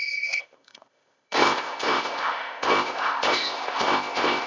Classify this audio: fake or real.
fake